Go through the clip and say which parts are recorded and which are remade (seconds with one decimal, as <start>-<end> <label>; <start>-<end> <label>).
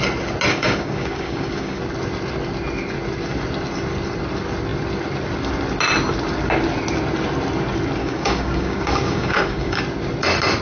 0.0-0.5 recorded; 0.5-1.8 remade; 1.8-8.0 recorded; 8.0-9.8 remade; 9.8-10.6 recorded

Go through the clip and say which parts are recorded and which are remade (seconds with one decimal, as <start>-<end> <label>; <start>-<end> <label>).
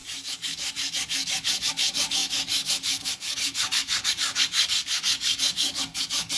0.0-6.4 remade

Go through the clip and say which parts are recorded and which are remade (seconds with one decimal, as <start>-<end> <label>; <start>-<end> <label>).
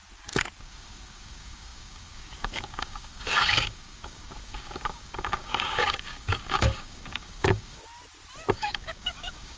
0.0-0.6 recorded; 0.6-7.8 remade; 7.8-8.5 recorded; 8.5-9.6 remade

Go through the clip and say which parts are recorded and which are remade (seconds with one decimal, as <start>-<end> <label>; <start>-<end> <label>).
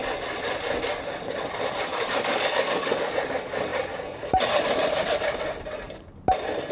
0.0-1.9 recorded; 1.9-3.1 remade; 3.1-6.7 recorded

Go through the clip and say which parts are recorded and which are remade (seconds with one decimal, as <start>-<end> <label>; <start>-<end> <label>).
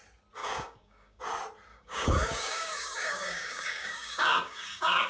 0.0-0.4 recorded; 0.4-1.2 remade; 1.2-1.7 recorded; 1.7-5.1 remade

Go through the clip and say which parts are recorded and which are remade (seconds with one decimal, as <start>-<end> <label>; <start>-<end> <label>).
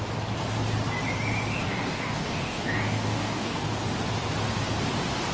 0.0-1.6 recorded; 1.6-3.9 remade; 3.9-5.3 recorded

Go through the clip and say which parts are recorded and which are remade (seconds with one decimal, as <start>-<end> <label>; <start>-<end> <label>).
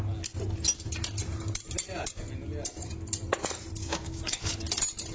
0.0-3.8 recorded; 3.8-4.6 remade; 4.6-5.1 recorded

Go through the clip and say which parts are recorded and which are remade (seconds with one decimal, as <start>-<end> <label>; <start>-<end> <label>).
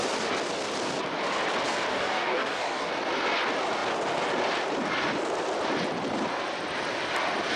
0.0-1.9 recorded; 1.9-2.9 remade; 2.9-7.6 recorded